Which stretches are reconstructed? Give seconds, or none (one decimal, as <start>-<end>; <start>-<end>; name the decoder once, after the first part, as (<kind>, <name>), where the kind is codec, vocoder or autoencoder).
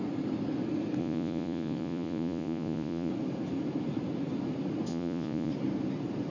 1.0-3.1 (vocoder, Vocos); 4.9-5.5